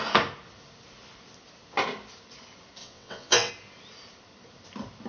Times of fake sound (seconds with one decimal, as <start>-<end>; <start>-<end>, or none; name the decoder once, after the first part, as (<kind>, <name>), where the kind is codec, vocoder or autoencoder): 2.8-3.5 (vocoder, WaveNeXt)